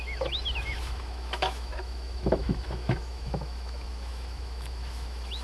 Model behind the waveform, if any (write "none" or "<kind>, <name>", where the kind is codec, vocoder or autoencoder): autoencoder, DAC-VAE